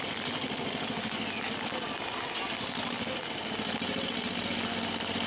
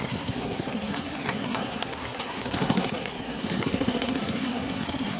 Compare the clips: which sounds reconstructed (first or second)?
second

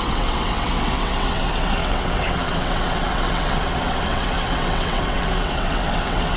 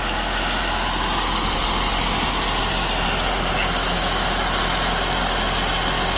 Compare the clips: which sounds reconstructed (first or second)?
first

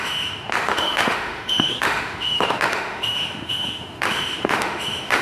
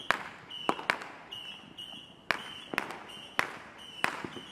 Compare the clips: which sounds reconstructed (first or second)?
first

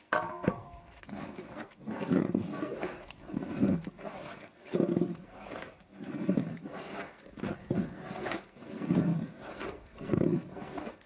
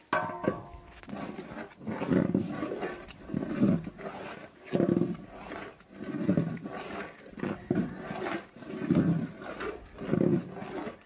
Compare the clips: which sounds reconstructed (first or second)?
first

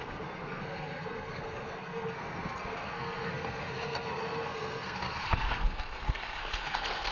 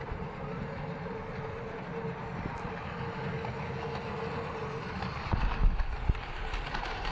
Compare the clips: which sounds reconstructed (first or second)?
first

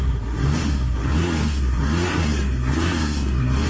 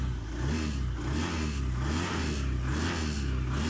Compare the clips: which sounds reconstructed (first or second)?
first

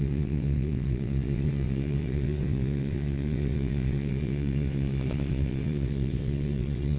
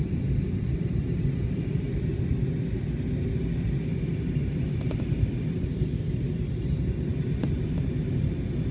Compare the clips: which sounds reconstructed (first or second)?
first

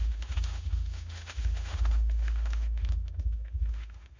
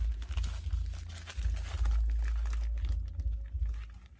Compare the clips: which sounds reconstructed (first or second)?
first